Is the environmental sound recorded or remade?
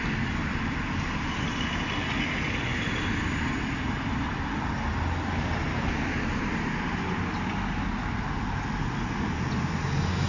recorded